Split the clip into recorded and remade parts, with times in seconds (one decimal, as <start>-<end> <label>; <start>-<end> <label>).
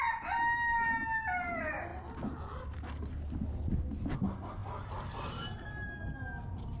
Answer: 0.0-6.8 recorded